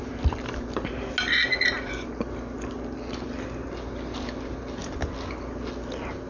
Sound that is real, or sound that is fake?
real